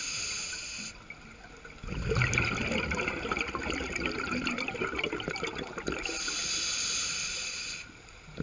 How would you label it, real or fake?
real